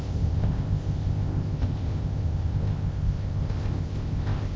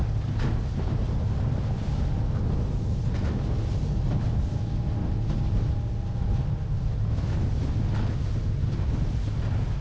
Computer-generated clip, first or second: first